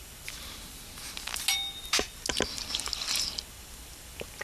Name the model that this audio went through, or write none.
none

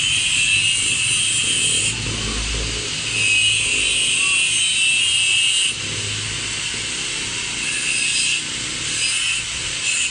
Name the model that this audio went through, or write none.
none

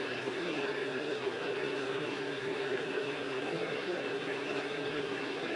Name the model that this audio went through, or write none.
codec, SNAC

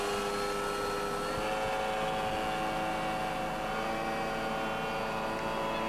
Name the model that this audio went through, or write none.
none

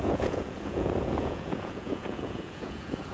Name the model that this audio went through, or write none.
vocoder, Vocos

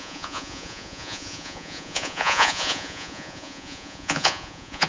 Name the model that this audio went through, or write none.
vocoder, Vocos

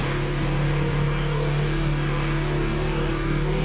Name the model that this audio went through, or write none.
codec, DAC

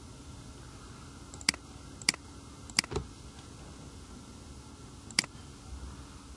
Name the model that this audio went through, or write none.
none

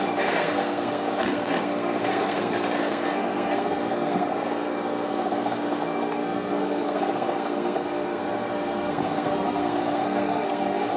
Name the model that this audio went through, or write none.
codec, SNAC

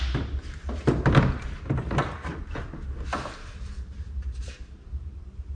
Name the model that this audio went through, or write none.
none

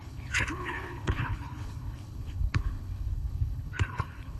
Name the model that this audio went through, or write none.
codec, HILCodec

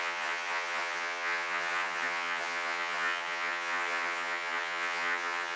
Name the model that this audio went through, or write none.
vocoder, HiFi-GAN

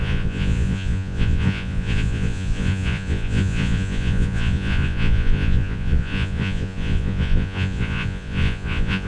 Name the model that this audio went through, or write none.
vocoder, Vocos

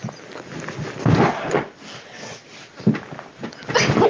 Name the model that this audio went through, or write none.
none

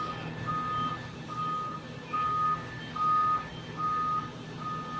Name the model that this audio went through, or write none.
none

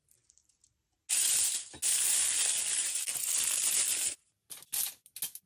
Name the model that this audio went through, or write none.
none